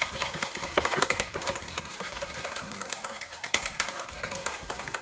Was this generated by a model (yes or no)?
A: yes